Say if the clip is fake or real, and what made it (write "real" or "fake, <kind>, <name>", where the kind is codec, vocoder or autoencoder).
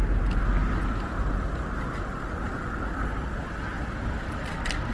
real